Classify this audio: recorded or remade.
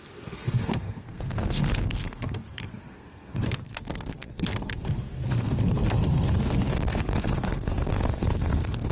remade